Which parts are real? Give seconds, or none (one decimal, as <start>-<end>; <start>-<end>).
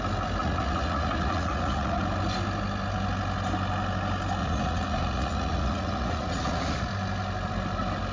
0.0-0.4; 2.0-4.4; 6.9-8.1